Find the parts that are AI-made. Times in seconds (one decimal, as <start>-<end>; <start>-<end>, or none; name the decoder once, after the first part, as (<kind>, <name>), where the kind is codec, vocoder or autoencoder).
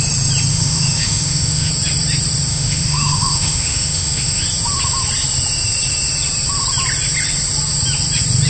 0.5-1.7 (autoencoder, DAC-VAE); 2.5-4.4